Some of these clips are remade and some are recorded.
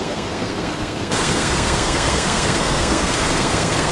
remade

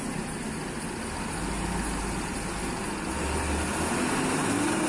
recorded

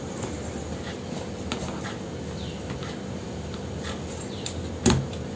recorded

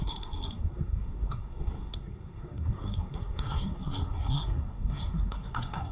remade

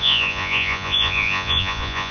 remade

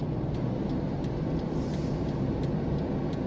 recorded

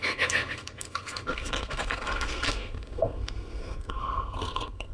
remade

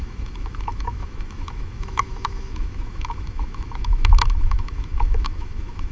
remade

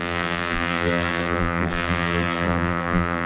remade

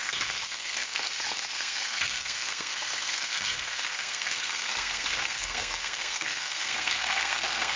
remade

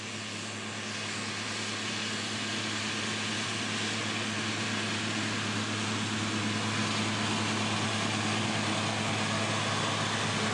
recorded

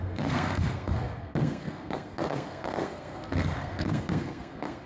remade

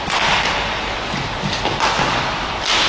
recorded